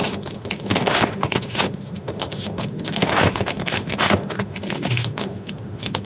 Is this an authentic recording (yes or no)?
no